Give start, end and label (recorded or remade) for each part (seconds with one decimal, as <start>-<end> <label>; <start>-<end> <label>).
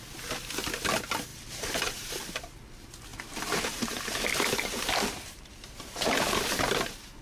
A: 0.0-1.3 recorded; 1.3-2.6 remade; 2.6-3.1 recorded; 3.1-6.3 remade; 6.3-7.2 recorded